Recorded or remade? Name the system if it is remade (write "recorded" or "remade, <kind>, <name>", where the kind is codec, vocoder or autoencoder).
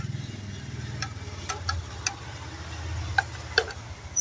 recorded